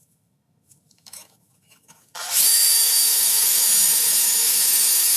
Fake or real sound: fake